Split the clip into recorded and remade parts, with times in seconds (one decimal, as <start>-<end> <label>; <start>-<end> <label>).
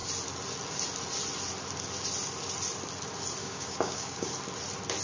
0.0-3.4 recorded; 3.4-4.3 remade; 4.3-5.0 recorded